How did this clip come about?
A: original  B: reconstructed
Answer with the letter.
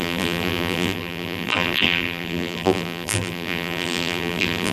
B